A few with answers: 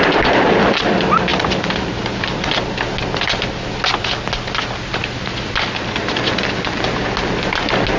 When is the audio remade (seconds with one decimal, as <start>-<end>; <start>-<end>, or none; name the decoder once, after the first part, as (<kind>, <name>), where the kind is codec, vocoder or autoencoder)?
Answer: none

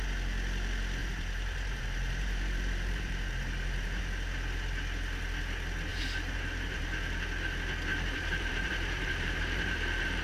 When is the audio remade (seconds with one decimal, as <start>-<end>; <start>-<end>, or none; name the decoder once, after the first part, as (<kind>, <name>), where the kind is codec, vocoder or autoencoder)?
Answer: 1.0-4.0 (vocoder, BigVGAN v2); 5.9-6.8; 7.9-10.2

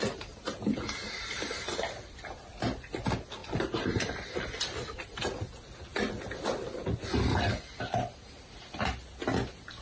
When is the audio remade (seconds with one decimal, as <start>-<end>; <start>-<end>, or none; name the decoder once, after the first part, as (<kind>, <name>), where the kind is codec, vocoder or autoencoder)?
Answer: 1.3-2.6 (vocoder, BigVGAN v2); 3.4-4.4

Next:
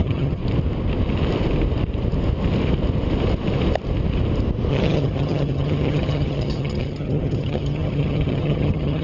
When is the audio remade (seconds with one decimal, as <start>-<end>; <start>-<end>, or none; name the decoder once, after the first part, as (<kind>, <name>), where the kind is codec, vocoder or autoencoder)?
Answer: 0.0-0.4 (vocoder, HiFi-GAN); 4.7-9.0

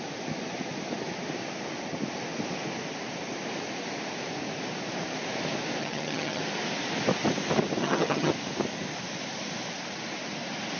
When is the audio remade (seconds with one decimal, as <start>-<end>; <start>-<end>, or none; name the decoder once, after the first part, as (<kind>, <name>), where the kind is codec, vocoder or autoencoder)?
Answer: 5.8-6.4 (vocoder, HiFi-GAN); 7.8-8.3